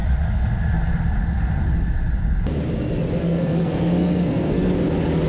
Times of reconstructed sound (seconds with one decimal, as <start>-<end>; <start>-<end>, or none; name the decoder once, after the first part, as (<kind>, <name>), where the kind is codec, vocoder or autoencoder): 3.2-4.7 (codec, SNAC)